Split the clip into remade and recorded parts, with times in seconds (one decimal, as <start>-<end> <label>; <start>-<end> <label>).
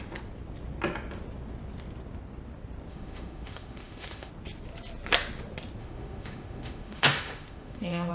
0.0-2.9 recorded; 2.9-4.3 remade; 4.3-5.8 recorded; 5.8-8.1 remade